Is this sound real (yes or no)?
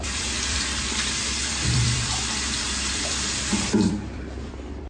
no